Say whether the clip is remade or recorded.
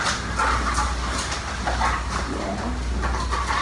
recorded